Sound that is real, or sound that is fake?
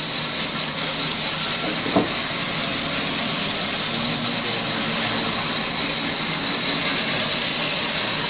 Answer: real